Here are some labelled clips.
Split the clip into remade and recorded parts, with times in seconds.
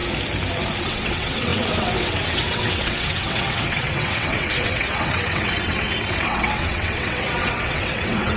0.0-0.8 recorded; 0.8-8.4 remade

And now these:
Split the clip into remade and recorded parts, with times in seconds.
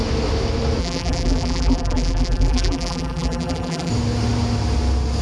0.0-0.8 recorded; 0.8-3.9 remade; 3.9-5.2 recorded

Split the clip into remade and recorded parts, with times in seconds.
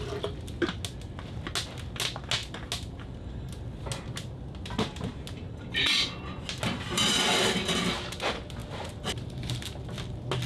0.0-10.5 recorded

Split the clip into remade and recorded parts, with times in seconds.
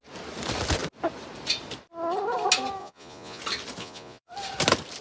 0.0-2.8 recorded; 2.8-3.4 remade; 3.4-3.8 recorded; 3.8-4.3 remade; 4.3-5.0 recorded